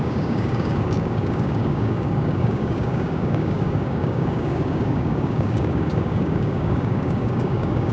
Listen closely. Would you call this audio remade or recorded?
remade